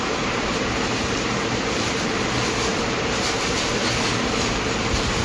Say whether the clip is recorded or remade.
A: remade